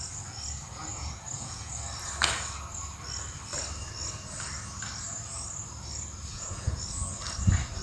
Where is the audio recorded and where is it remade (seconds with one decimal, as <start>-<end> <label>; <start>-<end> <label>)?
0.0-0.9 recorded; 0.9-1.7 remade; 1.7-6.3 recorded; 6.3-6.8 remade; 6.8-7.8 recorded